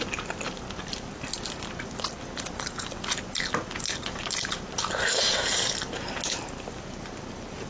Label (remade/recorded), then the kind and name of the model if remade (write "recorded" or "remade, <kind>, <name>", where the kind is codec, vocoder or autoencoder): recorded